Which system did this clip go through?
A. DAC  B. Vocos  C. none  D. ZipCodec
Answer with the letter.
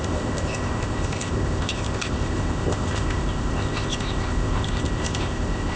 D